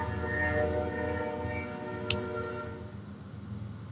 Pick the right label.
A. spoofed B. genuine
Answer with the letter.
B